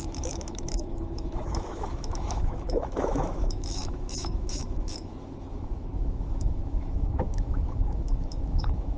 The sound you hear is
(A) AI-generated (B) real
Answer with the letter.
A